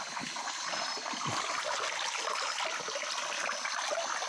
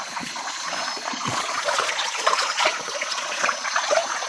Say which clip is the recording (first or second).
first